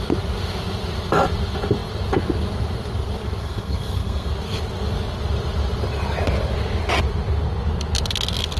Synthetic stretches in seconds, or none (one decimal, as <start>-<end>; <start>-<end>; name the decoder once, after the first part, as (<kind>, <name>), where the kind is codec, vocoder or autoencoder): 3.4-4.3 (codec, SNAC)